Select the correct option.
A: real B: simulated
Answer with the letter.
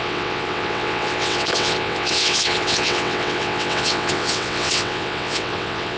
B